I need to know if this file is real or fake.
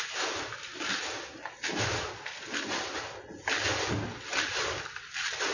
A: real